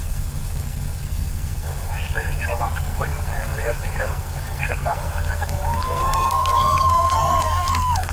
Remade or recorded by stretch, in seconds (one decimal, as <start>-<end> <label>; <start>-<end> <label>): 0.0-8.1 remade